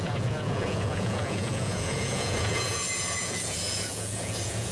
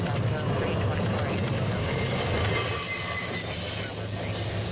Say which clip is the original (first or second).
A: second